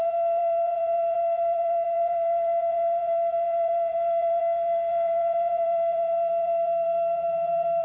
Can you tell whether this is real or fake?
fake